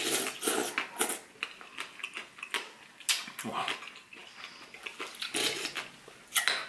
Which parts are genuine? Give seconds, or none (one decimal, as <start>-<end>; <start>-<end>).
0.0-6.7

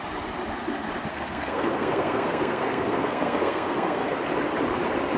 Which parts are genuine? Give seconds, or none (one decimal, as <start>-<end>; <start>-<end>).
0.0-1.1; 4.2-5.2

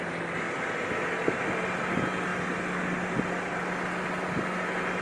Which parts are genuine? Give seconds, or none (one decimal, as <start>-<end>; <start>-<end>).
0.0-5.0

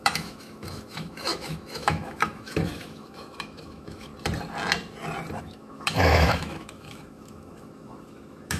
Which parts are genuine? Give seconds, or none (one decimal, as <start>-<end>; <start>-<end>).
4.1-5.4

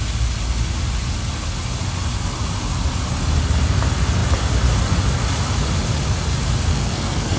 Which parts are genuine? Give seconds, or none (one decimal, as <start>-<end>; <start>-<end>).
0.0-6.7

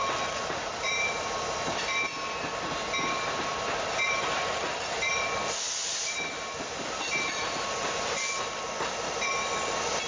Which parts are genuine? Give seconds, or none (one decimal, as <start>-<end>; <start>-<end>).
none

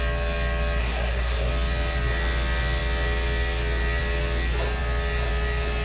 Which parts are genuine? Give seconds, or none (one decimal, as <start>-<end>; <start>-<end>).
0.0-0.8; 1.5-5.8

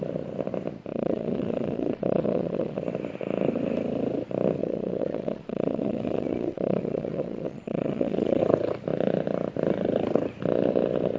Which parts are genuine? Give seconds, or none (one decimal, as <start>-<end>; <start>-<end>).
0.0-0.9; 2.8-4.6; 8.4-11.2